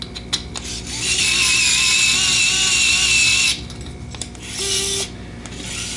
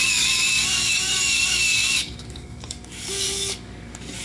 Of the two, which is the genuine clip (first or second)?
first